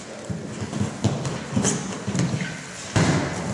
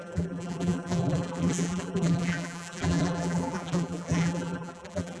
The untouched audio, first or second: first